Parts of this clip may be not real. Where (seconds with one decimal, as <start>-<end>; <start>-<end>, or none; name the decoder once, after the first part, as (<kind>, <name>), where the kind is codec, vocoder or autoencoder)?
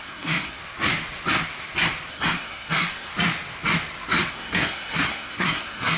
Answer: 0.0-0.6 (codec, SNAC); 2.1-3.1; 4.3-6.0